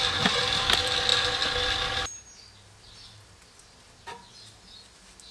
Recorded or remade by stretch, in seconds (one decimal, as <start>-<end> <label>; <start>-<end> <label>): 0.0-5.3 recorded